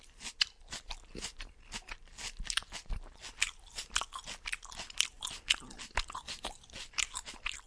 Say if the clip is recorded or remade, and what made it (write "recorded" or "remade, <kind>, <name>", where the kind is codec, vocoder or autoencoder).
recorded